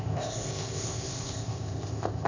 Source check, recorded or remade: remade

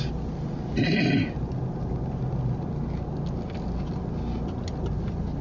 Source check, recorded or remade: recorded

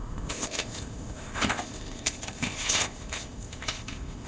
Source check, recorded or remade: remade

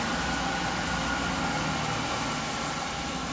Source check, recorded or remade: recorded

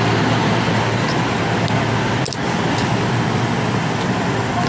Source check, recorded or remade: recorded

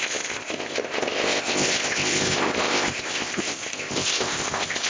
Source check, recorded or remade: remade